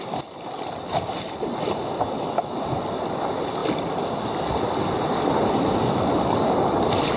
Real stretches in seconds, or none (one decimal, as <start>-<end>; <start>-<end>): 0.0-7.2